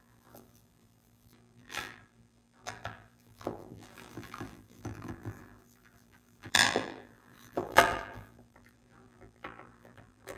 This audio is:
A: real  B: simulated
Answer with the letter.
B